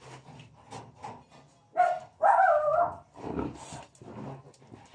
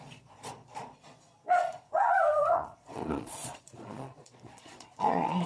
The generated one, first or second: second